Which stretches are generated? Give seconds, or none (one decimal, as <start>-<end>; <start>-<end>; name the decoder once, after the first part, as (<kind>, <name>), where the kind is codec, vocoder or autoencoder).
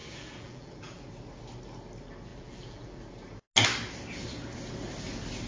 0.0-1.0 (vocoder, BigVGAN v2); 2.3-3.0